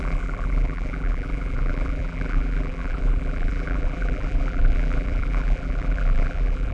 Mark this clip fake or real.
fake